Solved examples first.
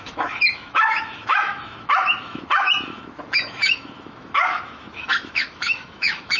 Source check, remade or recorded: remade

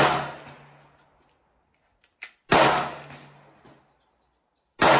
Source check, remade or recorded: recorded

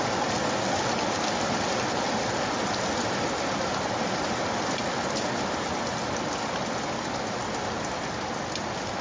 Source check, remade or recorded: recorded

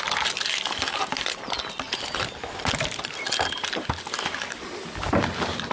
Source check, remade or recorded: recorded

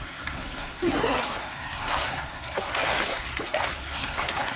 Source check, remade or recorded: remade